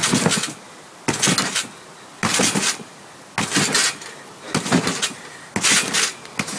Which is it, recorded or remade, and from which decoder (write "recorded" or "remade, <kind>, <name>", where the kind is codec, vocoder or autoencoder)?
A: recorded